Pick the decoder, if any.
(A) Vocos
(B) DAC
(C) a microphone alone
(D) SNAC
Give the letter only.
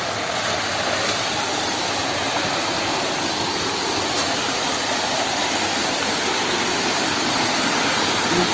C